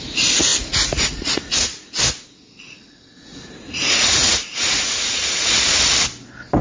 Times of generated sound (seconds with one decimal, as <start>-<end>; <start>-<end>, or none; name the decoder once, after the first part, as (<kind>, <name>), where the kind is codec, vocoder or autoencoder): 0.5-2.0 (vocoder, Vocos); 3.3-5.5